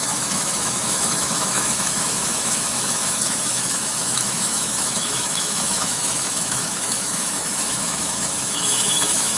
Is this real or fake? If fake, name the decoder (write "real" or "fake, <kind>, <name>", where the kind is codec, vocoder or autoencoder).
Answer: fake, autoencoder, DAC-VAE